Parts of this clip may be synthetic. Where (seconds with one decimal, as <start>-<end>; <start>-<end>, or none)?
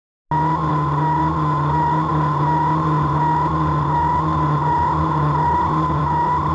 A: none